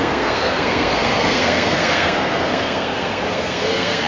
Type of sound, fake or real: fake